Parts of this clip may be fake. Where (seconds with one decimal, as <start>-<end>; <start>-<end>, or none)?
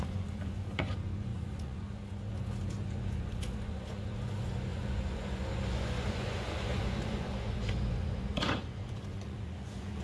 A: 0.0-10.0